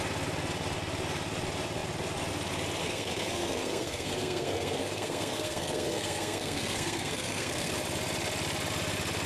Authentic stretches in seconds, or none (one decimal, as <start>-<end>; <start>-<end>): 0.0-2.8; 7.7-9.3